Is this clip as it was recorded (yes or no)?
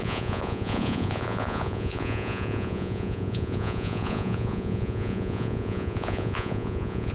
no